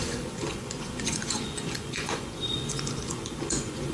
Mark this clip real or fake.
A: fake